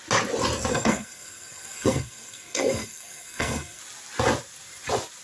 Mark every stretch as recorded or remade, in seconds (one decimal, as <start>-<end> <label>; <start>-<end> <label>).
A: 0.0-0.7 recorded; 0.7-3.8 remade; 3.8-5.2 recorded